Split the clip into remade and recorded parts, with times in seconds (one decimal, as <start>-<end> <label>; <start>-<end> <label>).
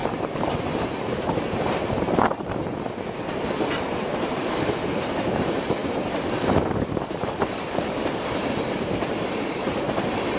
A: 0.0-2.6 remade; 2.6-3.7 recorded; 3.7-8.4 remade; 8.4-9.4 recorded; 9.4-10.4 remade